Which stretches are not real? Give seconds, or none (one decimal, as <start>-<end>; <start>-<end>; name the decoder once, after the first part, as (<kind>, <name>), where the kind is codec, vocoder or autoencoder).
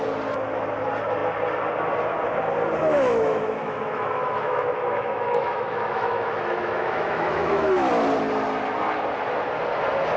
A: 2.8-7.9 (autoencoder, DAC-VAE)